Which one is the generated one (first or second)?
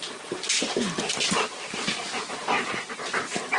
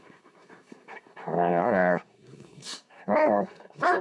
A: second